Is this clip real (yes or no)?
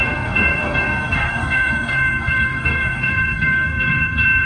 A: no